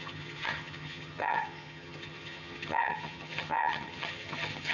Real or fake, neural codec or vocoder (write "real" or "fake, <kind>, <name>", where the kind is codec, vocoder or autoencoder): fake, vocoder, HiFi-GAN